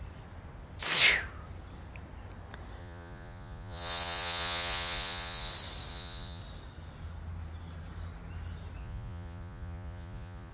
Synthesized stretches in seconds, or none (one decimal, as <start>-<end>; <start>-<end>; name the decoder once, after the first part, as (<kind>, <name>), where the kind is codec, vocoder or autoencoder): 2.8-5.5 (vocoder, Vocos); 5.9-6.4; 8.8-10.5